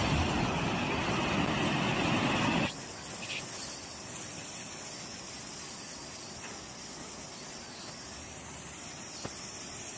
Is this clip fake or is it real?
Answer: real